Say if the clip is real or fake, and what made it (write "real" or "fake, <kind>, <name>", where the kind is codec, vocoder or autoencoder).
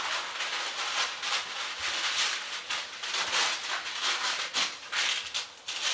real